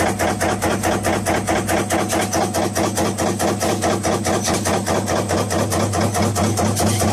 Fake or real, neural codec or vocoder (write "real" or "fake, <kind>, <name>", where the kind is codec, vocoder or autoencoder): real